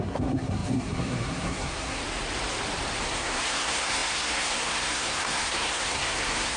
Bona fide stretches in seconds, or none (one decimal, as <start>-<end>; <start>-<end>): 2.0-3.0